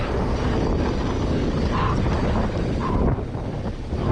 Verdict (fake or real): real